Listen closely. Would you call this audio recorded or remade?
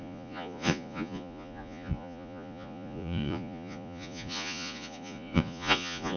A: remade